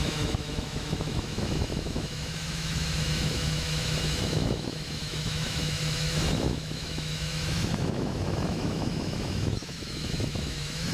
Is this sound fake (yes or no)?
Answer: yes